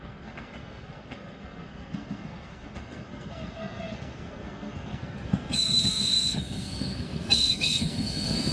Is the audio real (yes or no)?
no